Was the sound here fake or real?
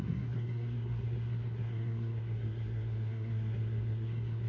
fake